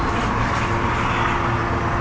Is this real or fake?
real